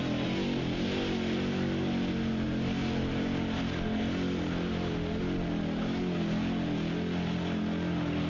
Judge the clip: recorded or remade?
recorded